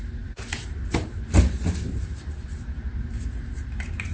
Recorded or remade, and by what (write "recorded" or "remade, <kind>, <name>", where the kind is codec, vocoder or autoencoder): remade, vocoder, BigVGAN v2